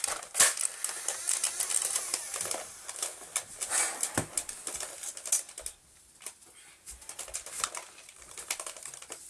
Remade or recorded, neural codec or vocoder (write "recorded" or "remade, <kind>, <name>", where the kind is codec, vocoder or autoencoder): recorded